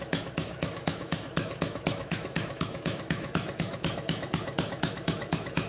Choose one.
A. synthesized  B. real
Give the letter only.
A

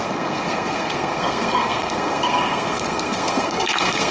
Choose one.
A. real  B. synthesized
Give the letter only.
B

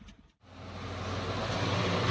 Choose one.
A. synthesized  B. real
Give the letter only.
B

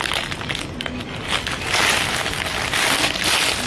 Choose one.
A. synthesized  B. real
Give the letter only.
B